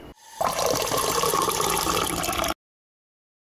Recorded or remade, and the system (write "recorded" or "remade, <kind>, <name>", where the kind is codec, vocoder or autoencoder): recorded